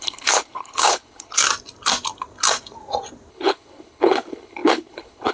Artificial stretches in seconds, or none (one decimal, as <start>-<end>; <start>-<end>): 0.0-1.4; 3.3-5.3